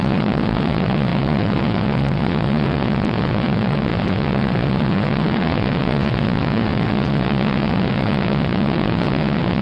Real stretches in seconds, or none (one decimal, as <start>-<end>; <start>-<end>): none